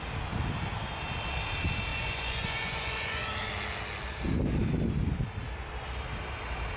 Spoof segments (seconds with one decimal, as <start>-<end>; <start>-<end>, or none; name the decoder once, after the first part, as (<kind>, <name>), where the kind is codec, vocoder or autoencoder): 1.9-3.3 (vocoder, Vocos)

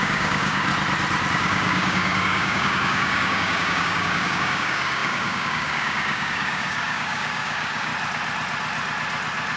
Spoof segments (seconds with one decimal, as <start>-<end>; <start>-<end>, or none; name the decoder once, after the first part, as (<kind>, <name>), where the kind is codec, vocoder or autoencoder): 0.0-0.7 (codec, DAC); 1.3-7.9

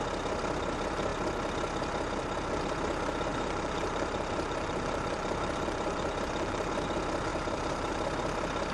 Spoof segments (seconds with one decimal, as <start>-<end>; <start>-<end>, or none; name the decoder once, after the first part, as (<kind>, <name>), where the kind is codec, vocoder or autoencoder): 3.3-6.7 (vocoder, BigVGAN v2); 7.3-7.9

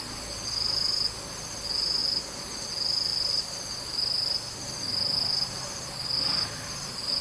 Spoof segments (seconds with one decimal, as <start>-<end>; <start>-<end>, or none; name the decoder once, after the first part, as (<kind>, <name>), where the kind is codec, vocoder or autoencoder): 3.1-4.5 (vocoder, BigVGAN v2)

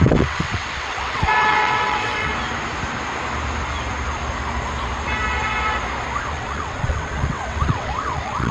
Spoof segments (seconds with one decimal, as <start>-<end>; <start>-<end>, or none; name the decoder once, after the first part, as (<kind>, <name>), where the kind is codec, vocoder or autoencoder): 0.0-2.3 (vocoder, WaveNeXt); 6.3-8.5

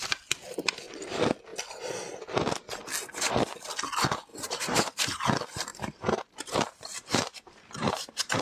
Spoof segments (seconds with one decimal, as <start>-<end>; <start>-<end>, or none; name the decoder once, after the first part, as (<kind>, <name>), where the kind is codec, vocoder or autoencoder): 4.3-5.0 (vocoder, BigVGAN v2); 5.7-8.4